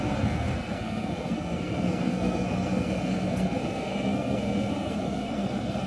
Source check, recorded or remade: remade